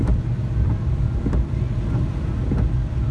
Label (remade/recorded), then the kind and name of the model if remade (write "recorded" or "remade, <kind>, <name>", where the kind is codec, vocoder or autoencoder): recorded